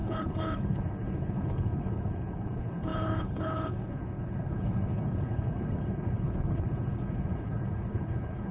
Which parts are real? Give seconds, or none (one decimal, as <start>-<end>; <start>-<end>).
none